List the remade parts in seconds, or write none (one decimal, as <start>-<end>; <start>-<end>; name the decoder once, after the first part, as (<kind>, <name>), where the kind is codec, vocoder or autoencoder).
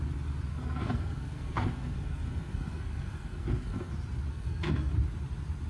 0.5-3.9 (codec, SNAC); 4.3-4.9